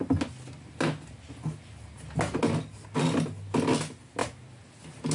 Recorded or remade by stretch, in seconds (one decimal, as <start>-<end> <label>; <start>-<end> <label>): 0.0-4.2 recorded; 4.2-5.1 remade